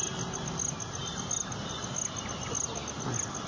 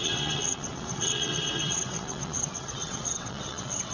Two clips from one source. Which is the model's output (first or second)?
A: second